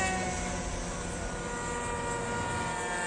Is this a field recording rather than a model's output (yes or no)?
yes